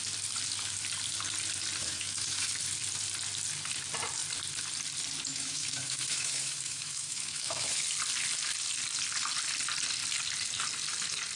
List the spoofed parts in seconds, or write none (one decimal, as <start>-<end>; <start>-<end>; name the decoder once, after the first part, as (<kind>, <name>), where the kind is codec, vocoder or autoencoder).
1.8-2.5 (autoencoder, DAC-VAE); 5.3-7.8